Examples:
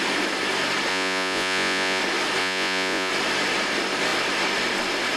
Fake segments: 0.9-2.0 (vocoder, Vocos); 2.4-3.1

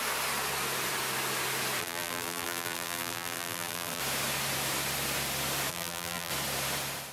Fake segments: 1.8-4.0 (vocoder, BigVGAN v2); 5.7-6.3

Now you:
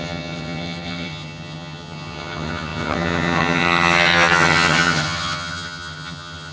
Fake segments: 0.0-6.5 (vocoder, HiFi-GAN)

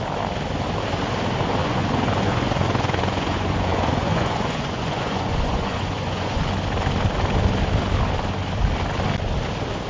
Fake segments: 1.6-6.4 (vocoder, Vocos)

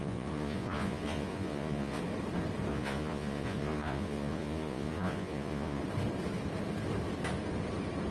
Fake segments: 0.0-2.0 (vocoder, Vocos); 2.7-5.8